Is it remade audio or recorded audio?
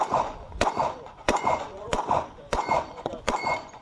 remade